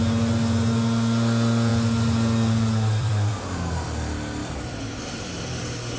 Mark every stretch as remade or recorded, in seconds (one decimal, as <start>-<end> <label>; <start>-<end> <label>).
0.0-1.7 recorded; 1.7-3.3 remade; 3.3-4.4 recorded; 4.4-6.0 remade